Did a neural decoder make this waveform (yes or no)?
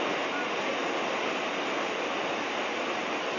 no